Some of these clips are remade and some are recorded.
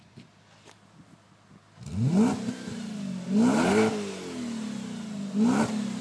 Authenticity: recorded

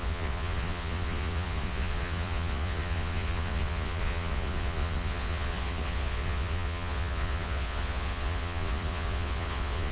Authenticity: remade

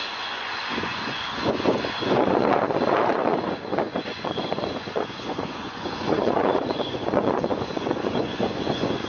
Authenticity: remade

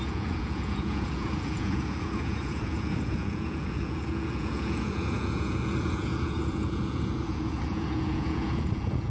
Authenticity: remade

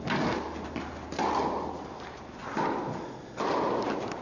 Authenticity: recorded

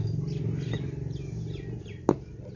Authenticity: recorded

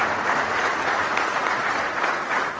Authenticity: remade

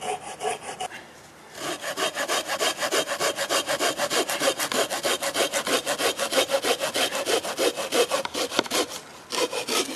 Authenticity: recorded